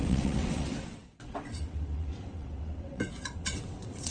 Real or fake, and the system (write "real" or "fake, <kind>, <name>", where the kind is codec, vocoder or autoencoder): fake, vocoder, WaveNeXt